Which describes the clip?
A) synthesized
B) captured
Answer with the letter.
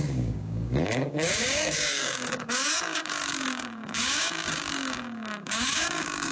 A